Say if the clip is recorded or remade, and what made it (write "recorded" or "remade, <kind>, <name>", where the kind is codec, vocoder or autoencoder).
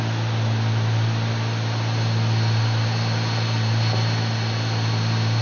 recorded